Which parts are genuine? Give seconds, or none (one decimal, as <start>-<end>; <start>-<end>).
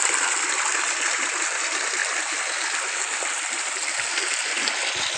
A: 0.0-5.2